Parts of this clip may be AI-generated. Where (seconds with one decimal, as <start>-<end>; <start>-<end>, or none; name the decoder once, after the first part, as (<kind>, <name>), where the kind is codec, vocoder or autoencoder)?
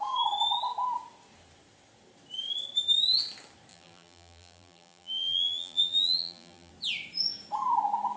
3.7-6.7 (vocoder, BigVGAN v2)